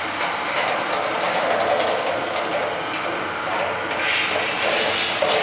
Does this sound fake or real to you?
real